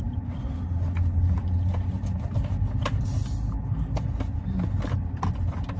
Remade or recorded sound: recorded